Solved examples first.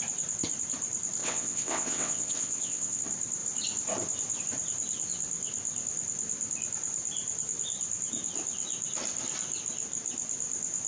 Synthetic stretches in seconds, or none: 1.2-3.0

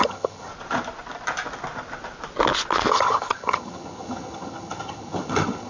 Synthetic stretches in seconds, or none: 0.0-0.5; 2.9-5.7

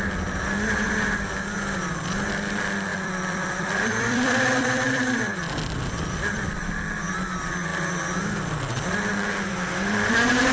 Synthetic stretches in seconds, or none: 2.9-6.4

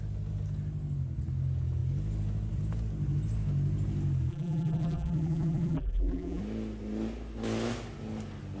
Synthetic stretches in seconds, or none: 4.3-6.4

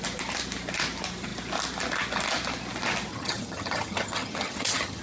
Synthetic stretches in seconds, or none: 3.1-5.0

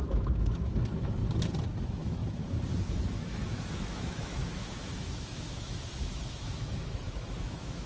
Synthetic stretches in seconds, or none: 0.0-1.2; 1.8-2.2; 2.8-7.9